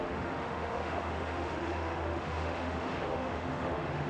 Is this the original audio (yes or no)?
no